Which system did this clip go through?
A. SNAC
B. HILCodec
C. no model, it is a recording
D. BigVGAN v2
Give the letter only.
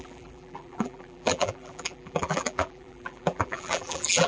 D